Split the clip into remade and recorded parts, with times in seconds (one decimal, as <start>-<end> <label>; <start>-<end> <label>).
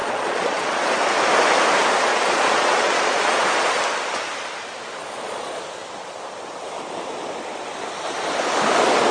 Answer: 0.0-0.7 remade; 0.7-2.1 recorded; 2.1-3.8 remade; 3.8-5.0 recorded; 5.0-5.6 remade; 5.6-9.1 recorded